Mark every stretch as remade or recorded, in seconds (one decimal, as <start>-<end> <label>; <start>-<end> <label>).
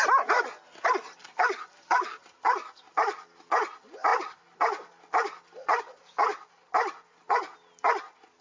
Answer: 0.0-8.4 recorded